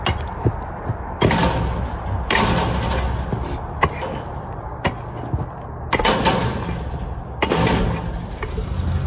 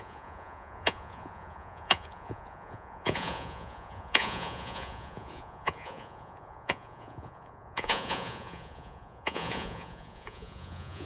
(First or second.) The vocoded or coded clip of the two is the second